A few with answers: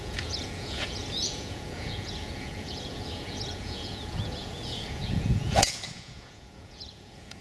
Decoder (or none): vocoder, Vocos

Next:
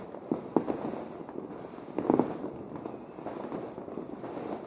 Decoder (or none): none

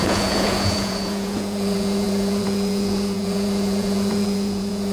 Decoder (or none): vocoder, Vocos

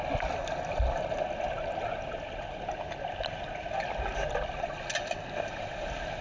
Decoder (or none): none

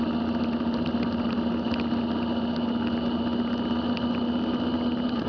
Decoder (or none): none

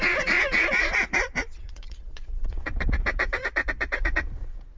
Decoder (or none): vocoder, Vocos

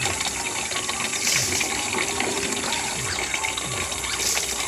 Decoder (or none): none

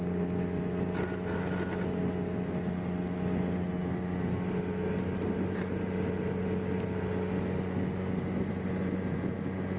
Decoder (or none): none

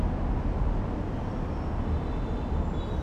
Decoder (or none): none